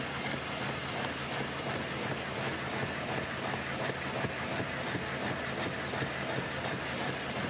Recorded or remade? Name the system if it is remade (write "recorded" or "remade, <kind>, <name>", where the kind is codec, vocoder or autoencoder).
recorded